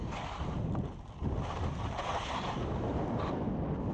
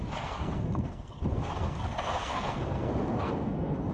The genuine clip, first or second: first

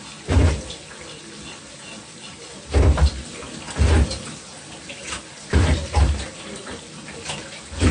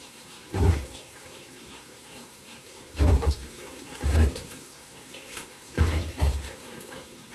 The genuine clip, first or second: first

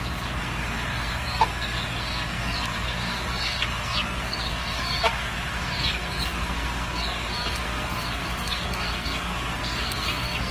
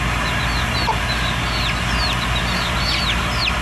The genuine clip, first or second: second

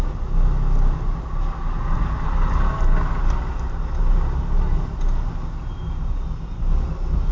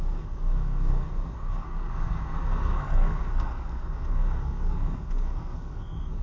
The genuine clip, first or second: first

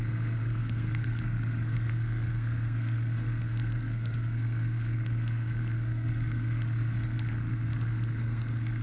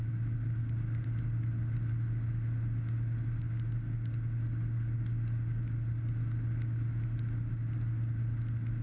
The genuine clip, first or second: second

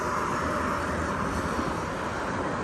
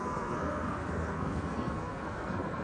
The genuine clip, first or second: first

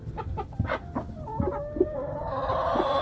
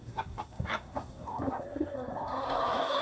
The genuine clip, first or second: first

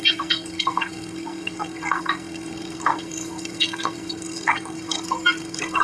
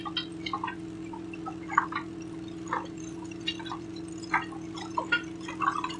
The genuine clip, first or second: second